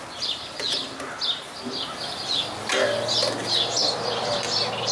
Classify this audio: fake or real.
real